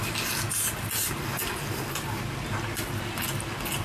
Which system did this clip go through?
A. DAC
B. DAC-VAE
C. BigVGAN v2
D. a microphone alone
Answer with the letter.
D